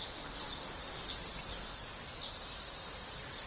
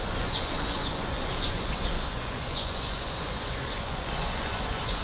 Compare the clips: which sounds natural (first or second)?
first